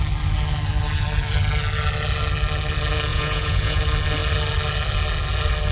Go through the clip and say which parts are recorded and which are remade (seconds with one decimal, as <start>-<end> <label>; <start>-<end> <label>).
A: 0.0-3.1 recorded; 3.1-3.8 remade; 3.8-5.7 recorded